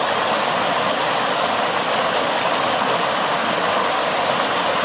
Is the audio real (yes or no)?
yes